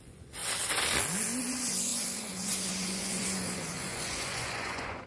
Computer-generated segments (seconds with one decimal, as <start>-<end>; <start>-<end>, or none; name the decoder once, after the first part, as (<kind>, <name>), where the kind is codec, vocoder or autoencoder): 0.0-0.4 (vocoder, Vocos); 1.5-5.1